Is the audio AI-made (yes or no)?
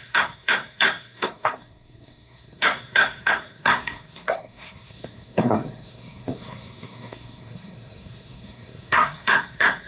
yes